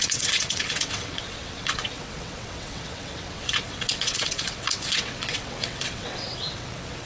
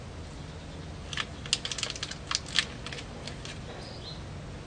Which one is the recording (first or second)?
second